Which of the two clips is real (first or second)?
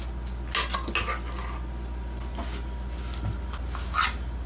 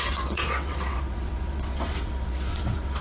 first